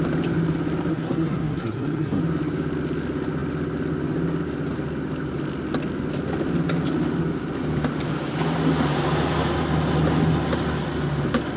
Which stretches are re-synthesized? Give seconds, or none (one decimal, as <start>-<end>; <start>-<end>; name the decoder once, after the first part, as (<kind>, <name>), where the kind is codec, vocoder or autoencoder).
0.9-2.2 (codec, SNAC)